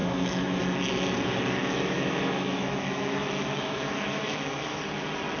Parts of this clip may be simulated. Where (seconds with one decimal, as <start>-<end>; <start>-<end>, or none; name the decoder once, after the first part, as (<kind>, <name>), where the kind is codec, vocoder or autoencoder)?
0.0-0.6 (autoencoder, DAC-VAE); 1.6-4.8